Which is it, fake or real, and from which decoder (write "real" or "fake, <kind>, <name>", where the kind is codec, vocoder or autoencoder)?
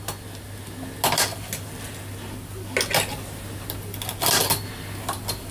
real